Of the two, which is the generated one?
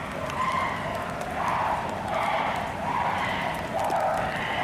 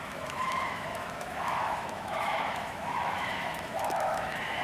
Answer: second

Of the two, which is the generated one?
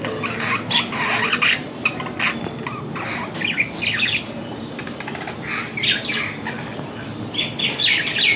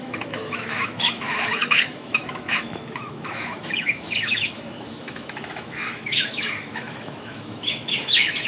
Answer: second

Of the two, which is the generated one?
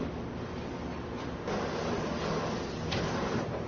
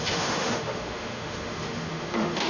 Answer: second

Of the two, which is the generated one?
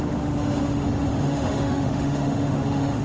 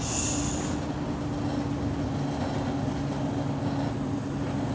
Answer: first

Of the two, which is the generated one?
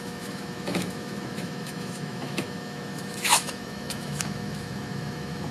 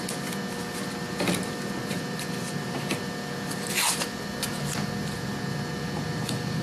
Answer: first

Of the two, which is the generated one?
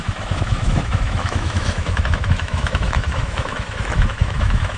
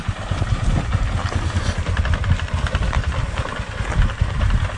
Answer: first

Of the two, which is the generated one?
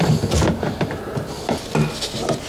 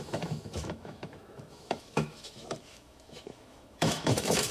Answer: second